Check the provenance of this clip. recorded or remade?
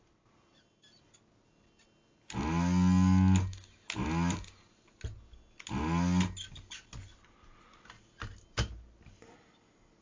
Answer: recorded